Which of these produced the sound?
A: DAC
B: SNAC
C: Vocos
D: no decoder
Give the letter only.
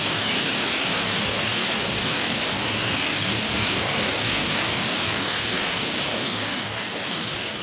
A